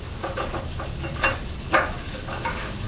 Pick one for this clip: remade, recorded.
remade